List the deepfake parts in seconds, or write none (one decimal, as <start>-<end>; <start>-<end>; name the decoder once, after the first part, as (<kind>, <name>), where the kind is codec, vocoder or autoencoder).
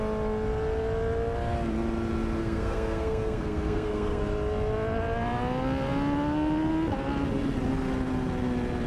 2.4-4.2 (codec, SNAC)